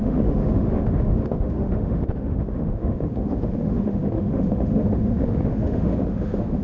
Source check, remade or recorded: remade